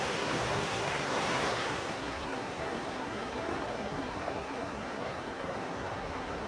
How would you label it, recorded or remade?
remade